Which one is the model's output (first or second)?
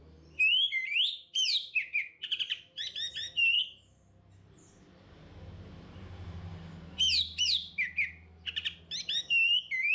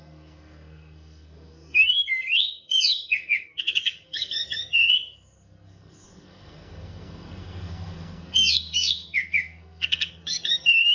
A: second